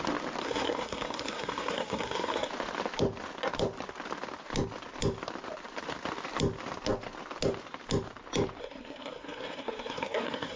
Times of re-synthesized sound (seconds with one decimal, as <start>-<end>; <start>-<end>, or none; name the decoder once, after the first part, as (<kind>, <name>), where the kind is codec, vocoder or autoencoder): 0.4-2.5 (codec, SNAC); 8.6-10.6